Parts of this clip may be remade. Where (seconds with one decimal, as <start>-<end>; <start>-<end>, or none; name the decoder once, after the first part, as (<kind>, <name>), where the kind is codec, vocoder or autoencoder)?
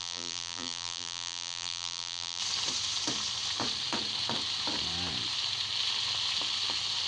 0.0-2.4 (vocoder, BigVGAN v2)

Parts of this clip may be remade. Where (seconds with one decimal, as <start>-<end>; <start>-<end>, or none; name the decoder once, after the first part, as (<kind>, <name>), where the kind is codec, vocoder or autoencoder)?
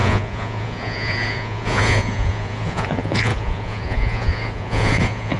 0.0-5.4 (vocoder, Vocos)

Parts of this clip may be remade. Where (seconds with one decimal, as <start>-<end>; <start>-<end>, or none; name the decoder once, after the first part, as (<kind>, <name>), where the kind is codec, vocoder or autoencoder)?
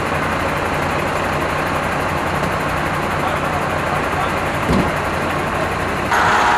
none